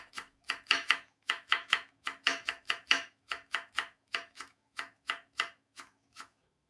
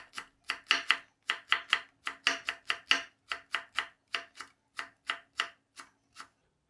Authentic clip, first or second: second